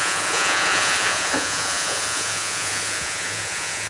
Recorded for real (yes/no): no